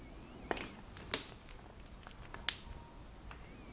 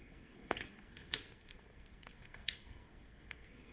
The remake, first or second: second